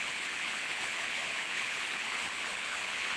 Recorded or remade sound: remade